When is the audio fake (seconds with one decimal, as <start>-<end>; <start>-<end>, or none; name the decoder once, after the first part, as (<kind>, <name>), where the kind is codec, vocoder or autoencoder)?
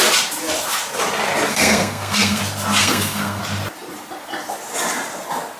1.5-2.4 (codec, SNAC); 2.8-3.4